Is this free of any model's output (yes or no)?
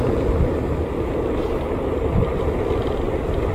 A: yes